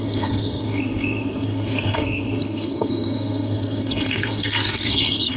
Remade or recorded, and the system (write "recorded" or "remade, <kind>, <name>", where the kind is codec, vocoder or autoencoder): remade, codec, SNAC